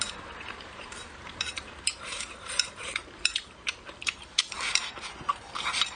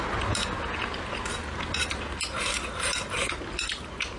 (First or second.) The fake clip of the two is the first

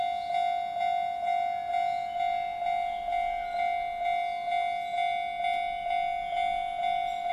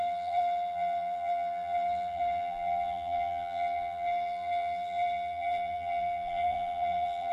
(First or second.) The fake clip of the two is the second